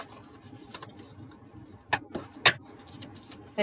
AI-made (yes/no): no